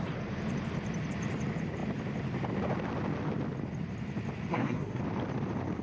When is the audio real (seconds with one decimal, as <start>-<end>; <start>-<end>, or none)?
0.0-4.5; 5.0-5.8

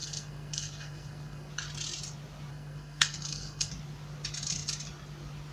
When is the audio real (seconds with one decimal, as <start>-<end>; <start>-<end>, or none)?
1.5-2.5; 3.7-5.5

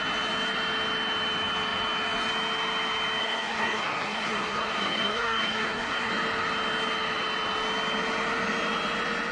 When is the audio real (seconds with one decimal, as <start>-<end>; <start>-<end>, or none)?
0.0-3.2; 6.1-9.3

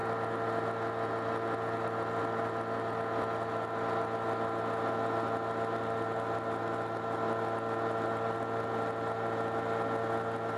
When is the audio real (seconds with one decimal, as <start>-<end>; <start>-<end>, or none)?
0.0-10.6

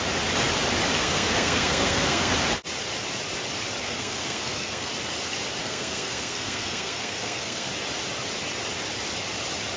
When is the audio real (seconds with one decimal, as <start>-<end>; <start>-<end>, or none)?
0.0-1.0; 2.3-3.8; 4.9-5.6; 7.7-9.8